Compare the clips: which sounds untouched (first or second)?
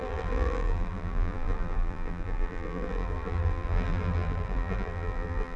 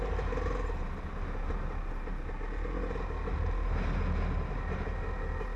second